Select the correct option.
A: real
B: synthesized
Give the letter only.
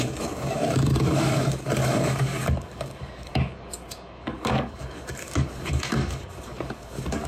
B